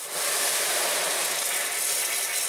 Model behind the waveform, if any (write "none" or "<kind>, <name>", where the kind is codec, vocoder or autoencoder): none